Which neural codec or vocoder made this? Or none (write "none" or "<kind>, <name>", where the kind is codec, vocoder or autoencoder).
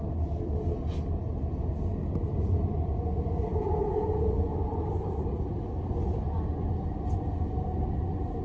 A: none